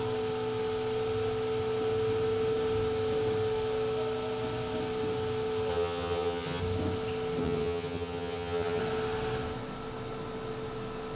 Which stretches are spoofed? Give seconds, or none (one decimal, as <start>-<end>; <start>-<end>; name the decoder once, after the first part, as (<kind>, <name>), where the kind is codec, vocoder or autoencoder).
5.7-6.6 (vocoder, HiFi-GAN); 7.4-8.8